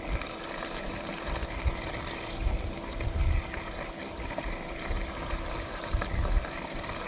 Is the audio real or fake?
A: real